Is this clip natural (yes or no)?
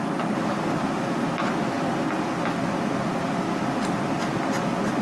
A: yes